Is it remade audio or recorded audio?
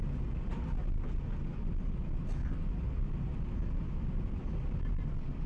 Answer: recorded